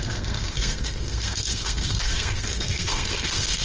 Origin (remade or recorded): remade